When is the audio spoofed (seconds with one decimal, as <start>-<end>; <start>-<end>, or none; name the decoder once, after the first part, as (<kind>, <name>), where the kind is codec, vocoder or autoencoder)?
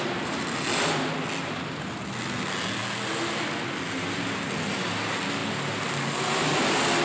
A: none